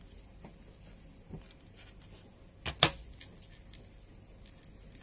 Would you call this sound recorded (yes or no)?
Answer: yes